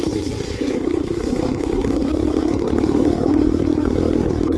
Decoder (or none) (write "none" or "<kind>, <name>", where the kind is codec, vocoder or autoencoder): codec, SNAC